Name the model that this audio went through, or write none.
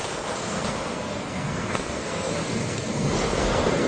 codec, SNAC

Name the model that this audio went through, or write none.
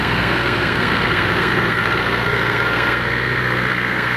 codec, SNAC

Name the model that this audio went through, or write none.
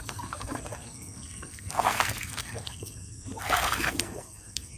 codec, SNAC